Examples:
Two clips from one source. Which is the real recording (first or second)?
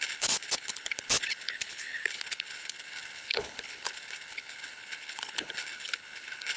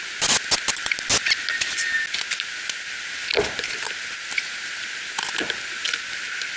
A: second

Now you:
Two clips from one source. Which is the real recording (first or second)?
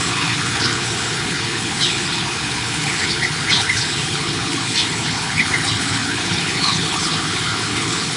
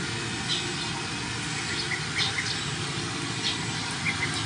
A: second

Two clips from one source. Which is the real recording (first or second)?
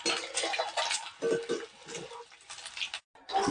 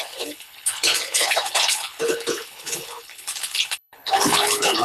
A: first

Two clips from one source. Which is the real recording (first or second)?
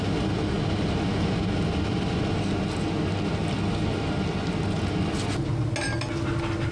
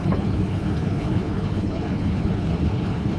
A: first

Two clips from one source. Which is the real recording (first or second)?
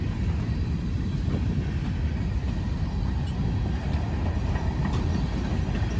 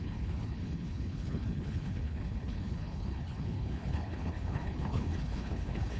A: first